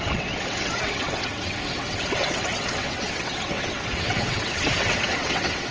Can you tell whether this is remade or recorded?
remade